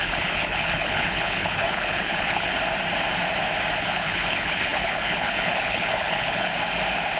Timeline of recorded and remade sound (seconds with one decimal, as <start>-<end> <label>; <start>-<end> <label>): 0.0-2.5 remade; 2.5-3.8 recorded; 3.8-6.5 remade; 6.5-7.2 recorded

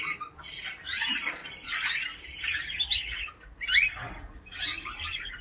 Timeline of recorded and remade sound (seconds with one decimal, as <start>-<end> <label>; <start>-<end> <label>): 0.0-5.4 recorded

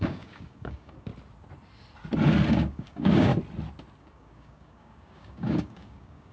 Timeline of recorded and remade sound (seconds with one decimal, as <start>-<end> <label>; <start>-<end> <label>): 0.0-1.1 remade; 1.1-2.5 recorded; 2.5-3.3 remade; 3.3-4.0 recorded; 4.0-6.3 remade

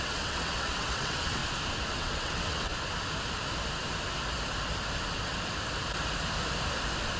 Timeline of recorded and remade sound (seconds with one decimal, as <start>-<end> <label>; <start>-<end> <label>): 0.0-1.4 remade; 1.4-1.9 recorded; 1.9-2.7 remade; 2.7-7.2 recorded